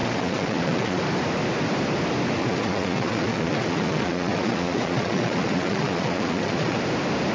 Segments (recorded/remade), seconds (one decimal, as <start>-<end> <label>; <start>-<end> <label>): 0.0-1.0 remade; 1.0-2.4 recorded; 2.4-6.8 remade; 6.8-7.3 recorded